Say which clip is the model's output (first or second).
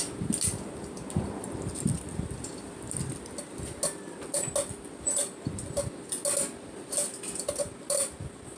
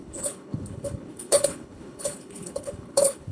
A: second